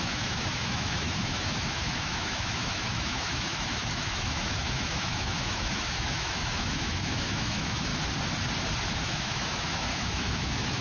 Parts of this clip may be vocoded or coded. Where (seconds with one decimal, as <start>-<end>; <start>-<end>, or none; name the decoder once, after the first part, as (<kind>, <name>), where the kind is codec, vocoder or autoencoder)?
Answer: 0.0-7.9 (autoencoder, DAC-VAE); 9.0-10.8